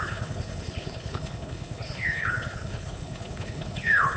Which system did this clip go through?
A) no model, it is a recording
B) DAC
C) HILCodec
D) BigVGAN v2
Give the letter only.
C